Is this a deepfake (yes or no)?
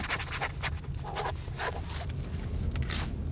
no